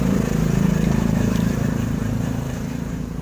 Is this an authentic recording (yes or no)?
no